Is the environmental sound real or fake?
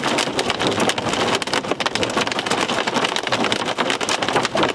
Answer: real